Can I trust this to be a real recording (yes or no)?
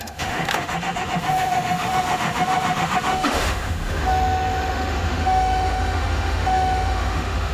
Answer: no